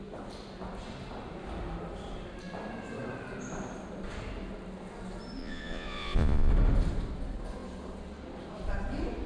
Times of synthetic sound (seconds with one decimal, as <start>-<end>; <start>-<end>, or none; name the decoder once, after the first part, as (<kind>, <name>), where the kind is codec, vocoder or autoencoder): 5.4-6.5 (vocoder, Vocos)